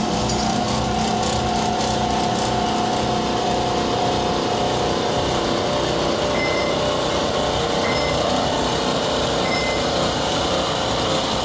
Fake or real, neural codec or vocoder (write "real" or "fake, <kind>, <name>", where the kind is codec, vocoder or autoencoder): real